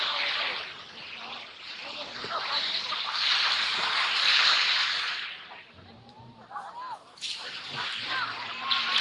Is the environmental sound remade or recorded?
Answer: remade